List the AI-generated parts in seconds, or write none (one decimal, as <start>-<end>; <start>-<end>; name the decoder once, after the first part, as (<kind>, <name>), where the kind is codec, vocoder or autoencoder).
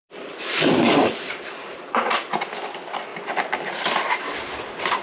0.0-3.1 (vocoder, BigVGAN v2); 3.7-5.0